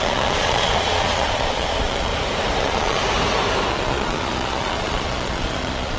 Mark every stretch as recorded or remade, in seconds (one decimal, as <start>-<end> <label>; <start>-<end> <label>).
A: 0.0-2.1 remade; 2.1-2.6 recorded; 2.6-3.0 remade; 3.0-3.7 recorded; 3.7-6.0 remade